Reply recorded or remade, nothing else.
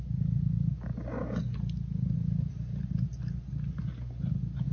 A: recorded